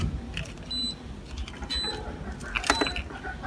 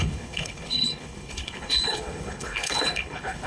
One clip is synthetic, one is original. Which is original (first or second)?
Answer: first